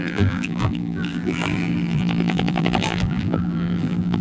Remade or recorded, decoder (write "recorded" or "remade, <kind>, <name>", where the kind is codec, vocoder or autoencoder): remade, vocoder, BigVGAN v2